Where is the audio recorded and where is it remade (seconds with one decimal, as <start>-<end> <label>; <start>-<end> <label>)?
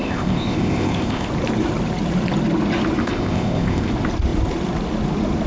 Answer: 0.0-1.3 remade; 1.3-3.0 recorded; 3.0-3.9 remade; 3.9-5.5 recorded